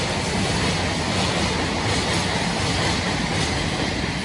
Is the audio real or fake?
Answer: real